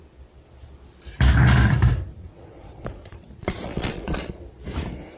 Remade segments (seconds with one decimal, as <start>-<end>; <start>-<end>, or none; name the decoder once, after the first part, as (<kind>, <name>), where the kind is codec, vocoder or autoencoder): 2.1-4.3 (vocoder, Vocos)